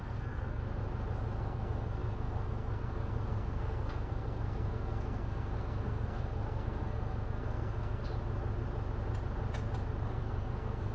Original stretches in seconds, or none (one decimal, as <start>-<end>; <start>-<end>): 0.6-1.4; 8.0-10.0